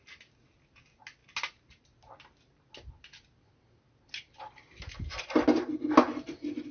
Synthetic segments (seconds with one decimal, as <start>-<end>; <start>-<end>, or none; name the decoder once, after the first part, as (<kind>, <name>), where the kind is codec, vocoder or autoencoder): none